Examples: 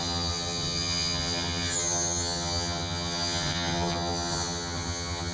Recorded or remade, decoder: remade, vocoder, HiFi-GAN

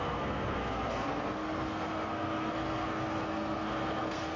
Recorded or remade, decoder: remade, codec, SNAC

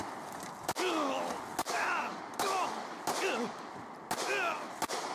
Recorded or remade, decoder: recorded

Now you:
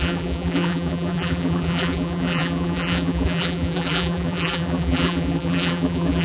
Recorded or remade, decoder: remade, vocoder, BigVGAN v2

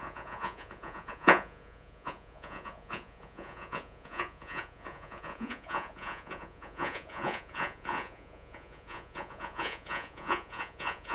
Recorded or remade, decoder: remade, vocoder, Vocos